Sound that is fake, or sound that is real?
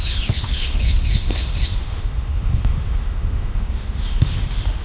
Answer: fake